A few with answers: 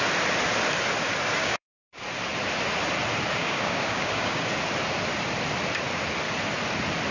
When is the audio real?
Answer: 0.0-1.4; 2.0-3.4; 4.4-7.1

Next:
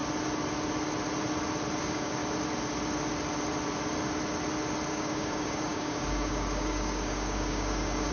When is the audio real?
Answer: 0.0-1.8; 2.2-4.9

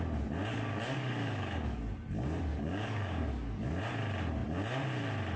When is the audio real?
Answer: 0.0-0.5; 1.8-2.5; 3.8-5.4

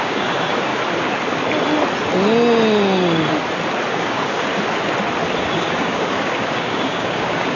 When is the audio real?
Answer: 0.7-3.9; 4.5-5.4

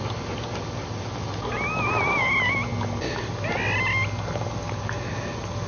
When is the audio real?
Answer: 0.0-5.7

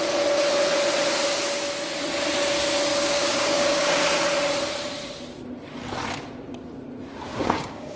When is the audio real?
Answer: 0.0-2.9; 4.1-7.3

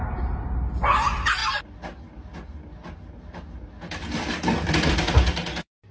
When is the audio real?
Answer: 0.0-5.9